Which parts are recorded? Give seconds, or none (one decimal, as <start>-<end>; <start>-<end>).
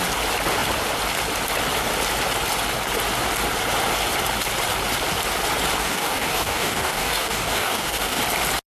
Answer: 0.0-5.8; 8.2-8.8